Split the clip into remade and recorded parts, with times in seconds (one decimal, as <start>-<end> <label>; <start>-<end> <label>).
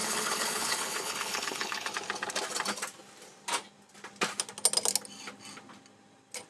0.0-1.9 remade; 1.9-6.5 recorded